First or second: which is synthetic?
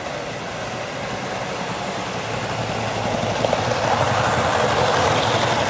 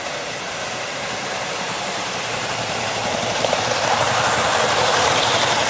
second